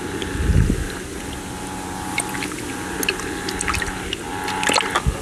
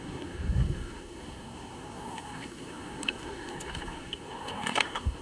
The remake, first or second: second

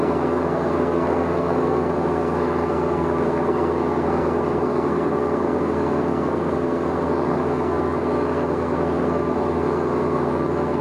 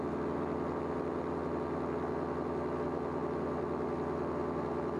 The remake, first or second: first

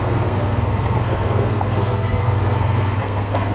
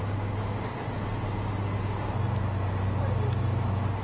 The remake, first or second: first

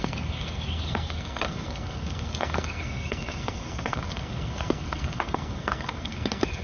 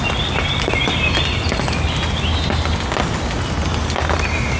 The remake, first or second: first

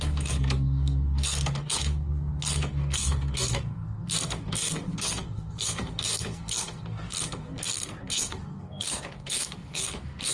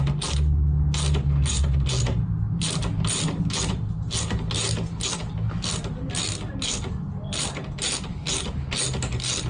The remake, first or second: first